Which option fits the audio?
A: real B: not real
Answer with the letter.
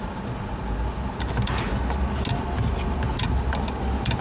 A